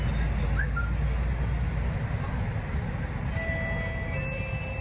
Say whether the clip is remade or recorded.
recorded